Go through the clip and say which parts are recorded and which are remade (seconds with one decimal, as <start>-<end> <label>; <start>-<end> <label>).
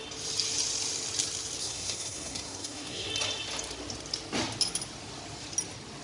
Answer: 0.0-1.6 recorded; 1.6-3.1 remade; 3.1-6.0 recorded